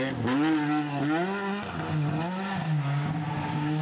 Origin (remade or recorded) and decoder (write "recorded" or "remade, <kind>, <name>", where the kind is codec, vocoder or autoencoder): recorded